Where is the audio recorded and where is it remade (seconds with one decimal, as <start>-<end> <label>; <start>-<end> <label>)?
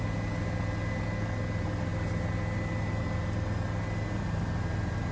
0.0-5.1 recorded